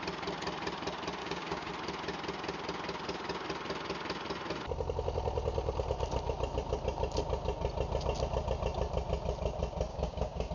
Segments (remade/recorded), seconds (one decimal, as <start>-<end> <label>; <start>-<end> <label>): 0.0-1.2 recorded; 1.2-1.7 remade; 1.7-9.9 recorded; 9.9-10.5 remade